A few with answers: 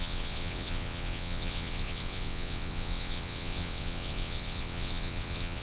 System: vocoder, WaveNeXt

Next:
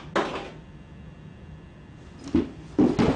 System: none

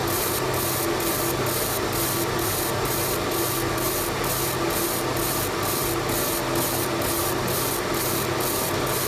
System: none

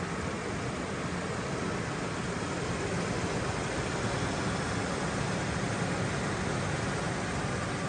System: none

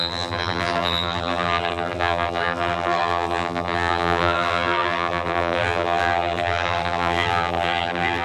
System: vocoder, BigVGAN v2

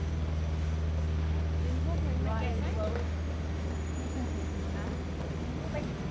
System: none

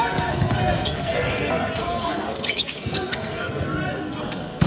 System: codec, SNAC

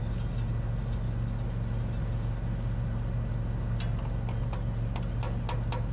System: none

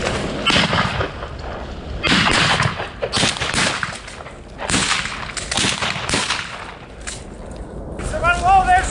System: none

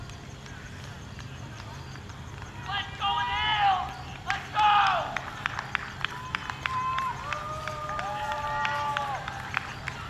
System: none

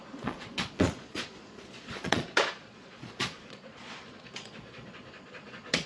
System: vocoder, Vocos